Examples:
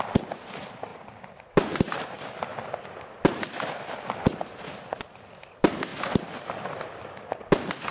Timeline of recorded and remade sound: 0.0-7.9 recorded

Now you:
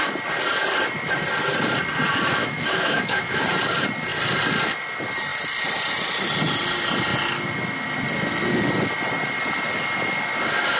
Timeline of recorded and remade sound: 0.0-2.4 recorded; 2.4-3.4 remade; 3.4-10.8 recorded

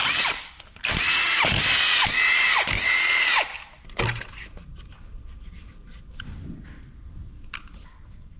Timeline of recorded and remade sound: 0.0-0.5 remade; 0.5-3.5 recorded; 3.5-6.1 remade; 6.1-8.4 recorded